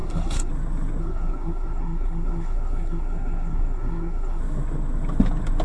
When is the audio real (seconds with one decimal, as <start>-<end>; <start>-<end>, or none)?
0.5-1.0; 4.4-5.6